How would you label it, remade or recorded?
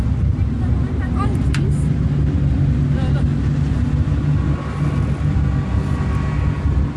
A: recorded